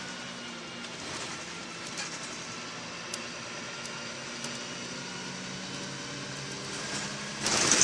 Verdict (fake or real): real